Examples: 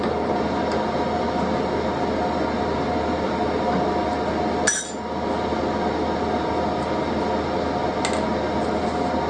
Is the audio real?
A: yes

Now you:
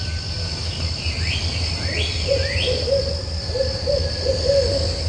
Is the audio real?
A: yes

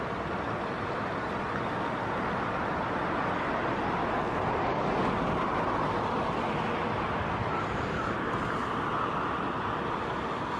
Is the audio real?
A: yes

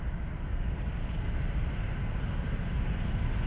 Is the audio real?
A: yes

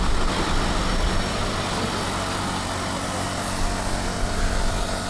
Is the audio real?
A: yes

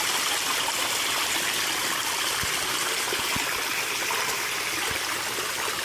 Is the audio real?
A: yes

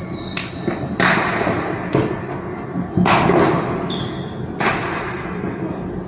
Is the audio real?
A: yes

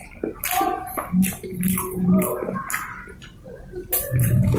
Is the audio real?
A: no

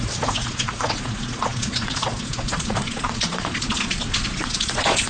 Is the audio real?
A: no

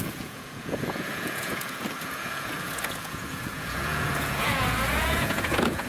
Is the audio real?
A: no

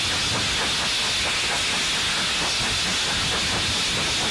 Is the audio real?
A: yes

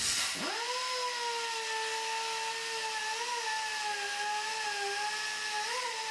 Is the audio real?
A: yes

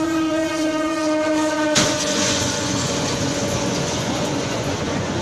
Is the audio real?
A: no